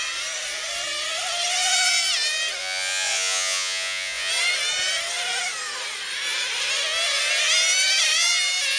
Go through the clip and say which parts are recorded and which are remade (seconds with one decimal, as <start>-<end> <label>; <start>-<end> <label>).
0.0-2.6 recorded; 2.6-4.3 remade; 4.3-8.8 recorded